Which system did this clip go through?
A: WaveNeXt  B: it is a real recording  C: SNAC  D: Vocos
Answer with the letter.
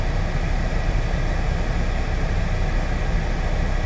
B